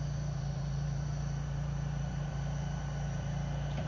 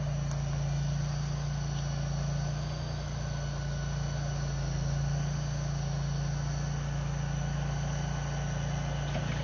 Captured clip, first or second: second